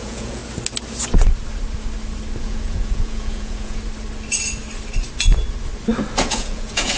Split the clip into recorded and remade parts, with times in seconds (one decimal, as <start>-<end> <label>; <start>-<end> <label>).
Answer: 0.0-0.4 remade; 0.4-2.4 recorded; 2.4-3.8 remade; 3.8-6.2 recorded; 6.2-7.0 remade